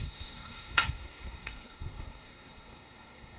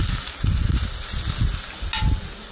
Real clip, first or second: second